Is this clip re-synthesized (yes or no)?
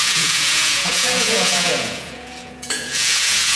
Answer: yes